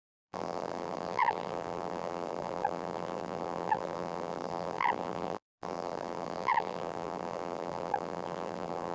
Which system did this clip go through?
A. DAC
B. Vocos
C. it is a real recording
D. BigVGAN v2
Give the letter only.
D